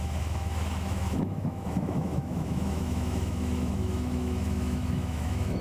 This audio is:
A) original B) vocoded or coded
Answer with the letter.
B